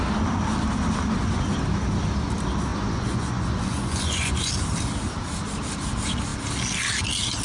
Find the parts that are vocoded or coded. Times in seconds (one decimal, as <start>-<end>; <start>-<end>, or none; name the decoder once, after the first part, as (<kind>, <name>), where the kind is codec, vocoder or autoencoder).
2.7-4.5 (vocoder, Vocos)